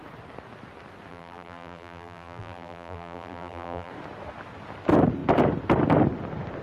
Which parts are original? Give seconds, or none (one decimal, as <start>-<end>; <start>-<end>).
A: 0.0-1.1; 3.9-6.6